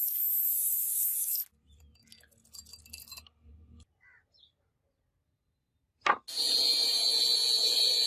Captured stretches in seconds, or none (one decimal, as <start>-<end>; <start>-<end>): 0.0-8.1